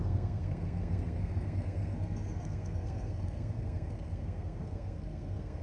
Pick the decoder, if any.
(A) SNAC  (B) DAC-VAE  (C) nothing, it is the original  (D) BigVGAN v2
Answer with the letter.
A